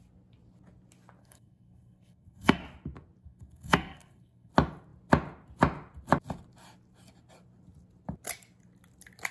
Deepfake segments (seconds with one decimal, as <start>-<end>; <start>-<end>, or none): 1.2-2.6; 3.2-4.5